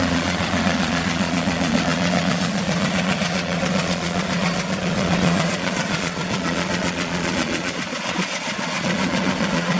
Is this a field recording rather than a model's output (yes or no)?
no